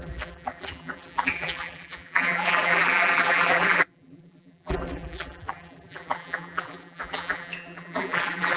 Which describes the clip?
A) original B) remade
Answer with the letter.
B